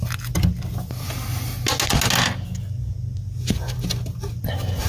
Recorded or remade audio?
recorded